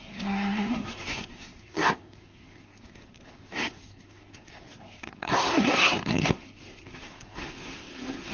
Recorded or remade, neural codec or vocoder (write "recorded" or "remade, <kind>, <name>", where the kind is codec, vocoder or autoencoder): remade, codec, SNAC